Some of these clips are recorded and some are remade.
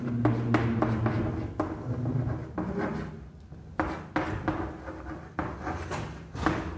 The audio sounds recorded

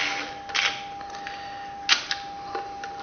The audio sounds recorded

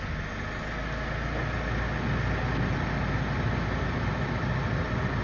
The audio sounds recorded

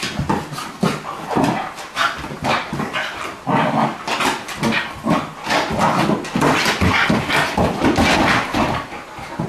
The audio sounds recorded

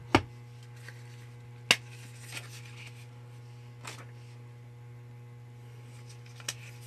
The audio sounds recorded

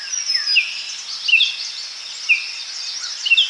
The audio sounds recorded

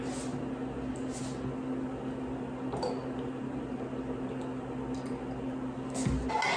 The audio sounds recorded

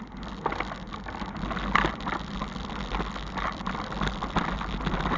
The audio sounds recorded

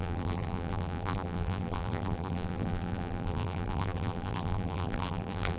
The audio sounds remade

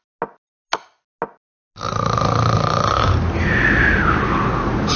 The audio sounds recorded